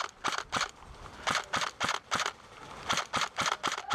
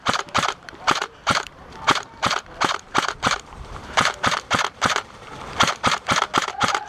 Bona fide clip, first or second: first